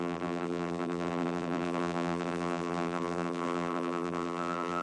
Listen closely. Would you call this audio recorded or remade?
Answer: remade